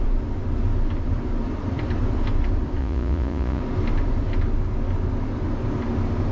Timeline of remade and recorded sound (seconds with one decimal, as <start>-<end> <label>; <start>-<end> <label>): 0.0-2.8 recorded; 2.8-3.6 remade; 3.6-6.3 recorded